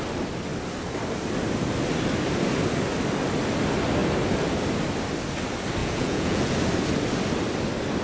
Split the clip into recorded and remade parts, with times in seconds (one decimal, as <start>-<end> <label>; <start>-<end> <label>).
0.0-5.8 recorded; 5.8-6.5 remade; 6.5-8.0 recorded